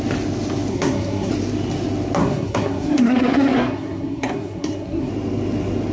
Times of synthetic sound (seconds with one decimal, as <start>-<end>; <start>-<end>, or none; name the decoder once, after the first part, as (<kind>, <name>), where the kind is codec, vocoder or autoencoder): 0.7-1.3 (codec, SNAC); 2.2-5.1